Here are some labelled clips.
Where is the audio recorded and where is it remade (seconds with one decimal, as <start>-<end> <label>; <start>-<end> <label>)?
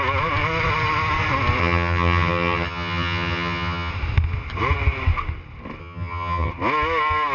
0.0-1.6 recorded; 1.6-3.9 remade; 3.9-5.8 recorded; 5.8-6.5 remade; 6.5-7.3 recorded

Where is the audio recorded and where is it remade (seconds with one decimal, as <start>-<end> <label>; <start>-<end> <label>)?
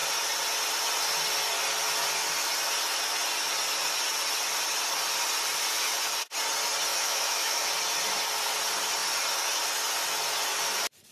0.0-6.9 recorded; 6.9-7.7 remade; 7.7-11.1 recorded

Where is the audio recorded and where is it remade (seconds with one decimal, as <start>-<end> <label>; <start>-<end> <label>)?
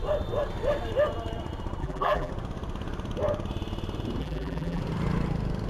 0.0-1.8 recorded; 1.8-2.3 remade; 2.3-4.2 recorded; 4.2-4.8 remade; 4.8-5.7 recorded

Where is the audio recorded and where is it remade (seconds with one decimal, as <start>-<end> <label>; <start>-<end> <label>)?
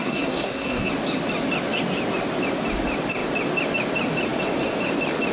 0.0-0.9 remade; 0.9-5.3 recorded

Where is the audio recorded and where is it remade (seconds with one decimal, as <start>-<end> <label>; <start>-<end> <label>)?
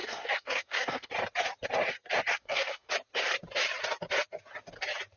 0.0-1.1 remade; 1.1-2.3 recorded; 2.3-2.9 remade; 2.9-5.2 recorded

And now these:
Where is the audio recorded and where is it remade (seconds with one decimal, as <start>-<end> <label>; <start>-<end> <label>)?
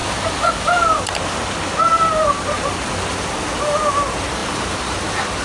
0.0-5.4 recorded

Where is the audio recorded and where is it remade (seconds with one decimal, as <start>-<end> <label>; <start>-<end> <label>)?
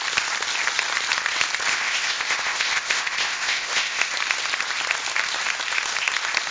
0.0-1.7 recorded; 1.7-4.0 remade; 4.0-6.5 recorded